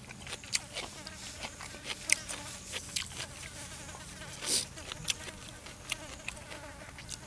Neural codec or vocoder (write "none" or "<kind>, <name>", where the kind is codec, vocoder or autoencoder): none